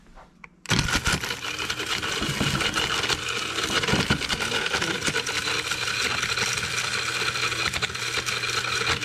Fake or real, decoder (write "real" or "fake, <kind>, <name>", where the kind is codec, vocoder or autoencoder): real